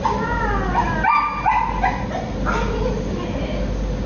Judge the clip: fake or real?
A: real